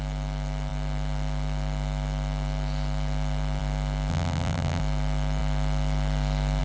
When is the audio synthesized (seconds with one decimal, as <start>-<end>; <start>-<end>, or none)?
4.1-4.8